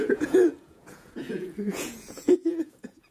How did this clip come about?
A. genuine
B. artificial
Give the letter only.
B